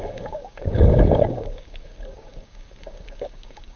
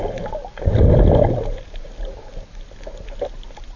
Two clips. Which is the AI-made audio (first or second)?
first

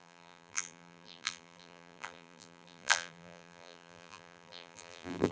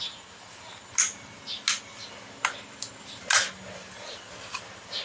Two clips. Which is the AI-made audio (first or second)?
first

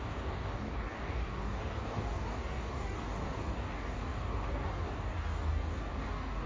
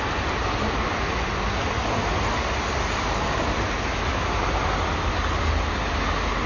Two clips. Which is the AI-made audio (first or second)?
first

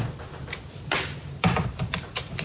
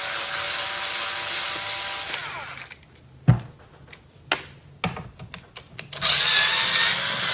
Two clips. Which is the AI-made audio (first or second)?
first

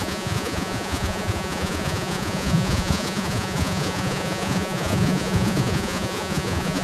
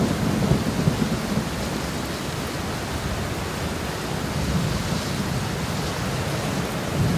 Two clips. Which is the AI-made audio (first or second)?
first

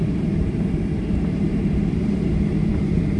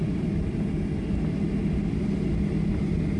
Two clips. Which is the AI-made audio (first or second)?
first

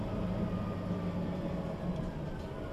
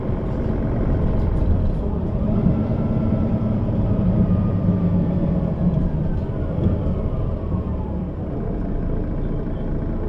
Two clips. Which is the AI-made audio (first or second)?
second